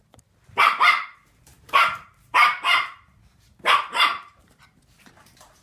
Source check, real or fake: fake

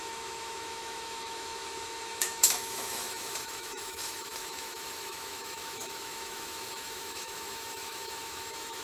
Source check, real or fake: fake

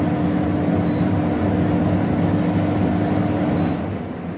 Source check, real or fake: real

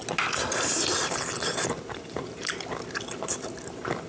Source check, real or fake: real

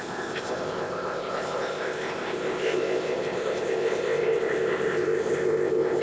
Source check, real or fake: fake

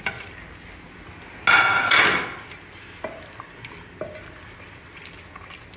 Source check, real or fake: real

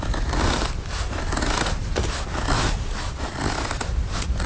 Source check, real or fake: real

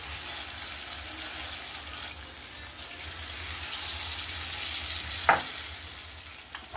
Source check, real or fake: real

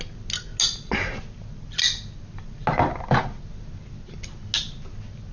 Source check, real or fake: real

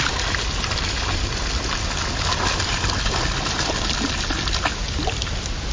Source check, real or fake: real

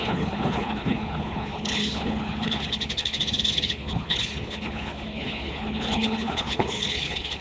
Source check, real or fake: fake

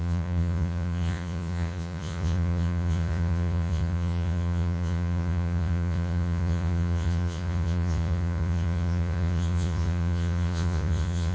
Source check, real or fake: fake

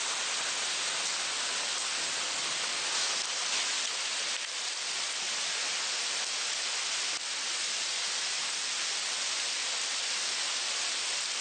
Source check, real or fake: real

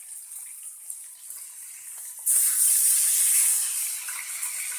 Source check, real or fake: real